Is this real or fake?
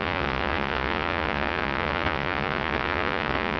fake